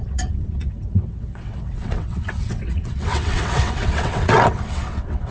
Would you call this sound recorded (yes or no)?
no